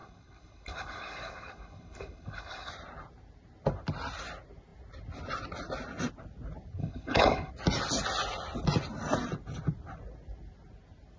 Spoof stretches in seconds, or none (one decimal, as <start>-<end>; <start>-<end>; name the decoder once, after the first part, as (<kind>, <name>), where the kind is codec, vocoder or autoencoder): 0.0-2.7 (codec, HILCodec); 6.8-7.5